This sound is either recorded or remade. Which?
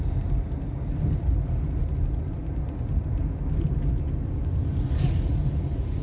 recorded